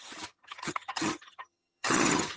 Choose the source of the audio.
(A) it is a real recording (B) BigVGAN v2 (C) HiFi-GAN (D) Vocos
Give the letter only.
C